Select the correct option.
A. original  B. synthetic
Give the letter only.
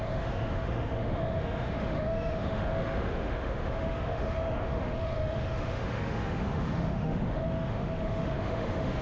B